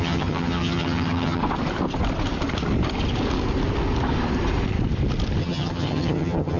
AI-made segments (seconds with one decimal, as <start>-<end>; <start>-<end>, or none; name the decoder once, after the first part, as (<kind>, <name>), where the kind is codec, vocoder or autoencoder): 0.0-1.4 (vocoder, HiFi-GAN); 5.4-6.6